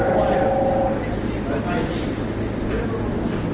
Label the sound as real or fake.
real